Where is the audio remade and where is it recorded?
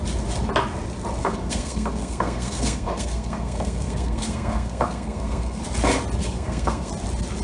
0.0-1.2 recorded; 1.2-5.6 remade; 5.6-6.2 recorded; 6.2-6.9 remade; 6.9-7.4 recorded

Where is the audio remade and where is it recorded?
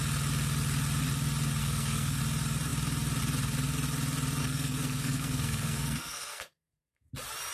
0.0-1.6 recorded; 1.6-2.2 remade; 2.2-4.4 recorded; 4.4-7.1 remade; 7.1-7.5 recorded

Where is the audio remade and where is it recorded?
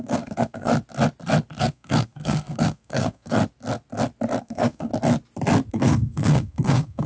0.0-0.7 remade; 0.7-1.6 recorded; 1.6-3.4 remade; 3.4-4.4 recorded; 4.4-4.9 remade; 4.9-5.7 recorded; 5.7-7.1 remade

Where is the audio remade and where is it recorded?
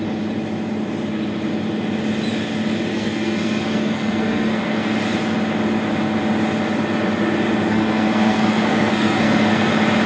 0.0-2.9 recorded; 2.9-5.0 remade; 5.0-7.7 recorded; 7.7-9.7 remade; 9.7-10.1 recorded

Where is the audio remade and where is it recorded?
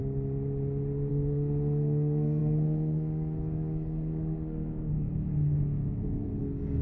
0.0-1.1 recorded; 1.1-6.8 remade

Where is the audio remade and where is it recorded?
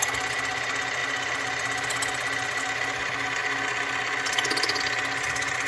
0.0-5.7 recorded